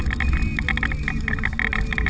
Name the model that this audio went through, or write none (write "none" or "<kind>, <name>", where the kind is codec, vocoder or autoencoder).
none